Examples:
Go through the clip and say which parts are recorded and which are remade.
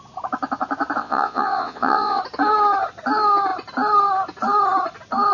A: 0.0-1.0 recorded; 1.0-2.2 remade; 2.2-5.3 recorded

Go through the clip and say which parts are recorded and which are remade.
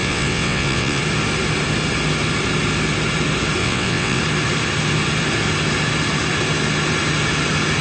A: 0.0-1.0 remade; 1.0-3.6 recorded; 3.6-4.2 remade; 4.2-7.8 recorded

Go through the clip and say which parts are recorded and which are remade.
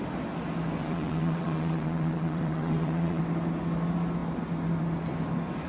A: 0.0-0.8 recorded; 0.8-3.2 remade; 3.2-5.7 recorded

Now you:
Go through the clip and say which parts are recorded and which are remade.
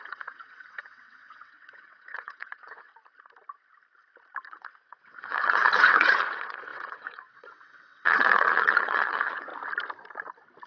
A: 0.0-2.9 remade; 2.9-4.5 recorded; 4.5-9.5 remade; 9.5-10.7 recorded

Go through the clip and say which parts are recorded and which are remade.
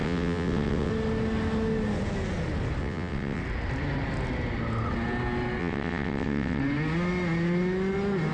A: 0.0-0.9 remade; 0.9-2.8 recorded; 2.8-3.4 remade; 3.4-5.6 recorded; 5.6-6.6 remade; 6.6-8.3 recorded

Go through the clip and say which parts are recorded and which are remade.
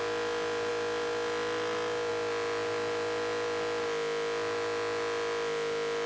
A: 0.0-6.1 recorded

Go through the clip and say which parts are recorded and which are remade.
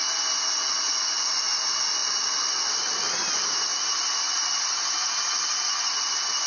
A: 0.0-0.6 recorded; 0.6-1.3 remade; 1.3-6.5 recorded